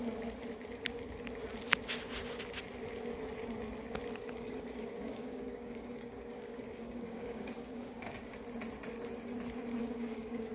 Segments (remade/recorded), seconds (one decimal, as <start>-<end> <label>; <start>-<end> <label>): 0.0-4.2 recorded; 4.2-8.4 remade; 8.4-9.8 recorded; 9.8-10.5 remade